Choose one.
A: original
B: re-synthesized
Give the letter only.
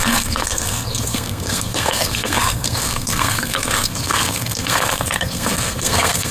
B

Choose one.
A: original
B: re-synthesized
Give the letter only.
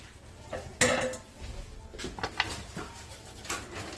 A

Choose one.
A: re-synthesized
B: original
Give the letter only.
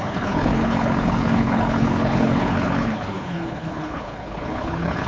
A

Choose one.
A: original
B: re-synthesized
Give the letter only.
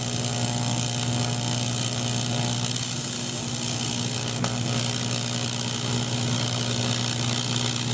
A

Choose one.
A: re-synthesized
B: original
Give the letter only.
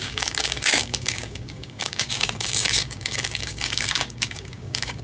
A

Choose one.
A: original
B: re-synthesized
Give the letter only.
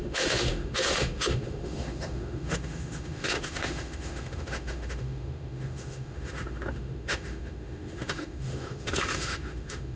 B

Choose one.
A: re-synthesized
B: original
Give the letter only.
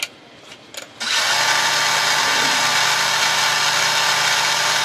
B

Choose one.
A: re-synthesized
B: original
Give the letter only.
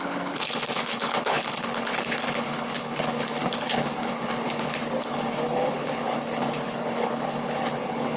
A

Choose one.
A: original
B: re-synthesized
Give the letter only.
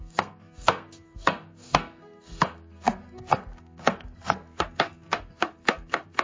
B